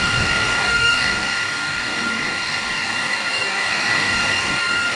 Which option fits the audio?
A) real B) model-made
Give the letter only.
B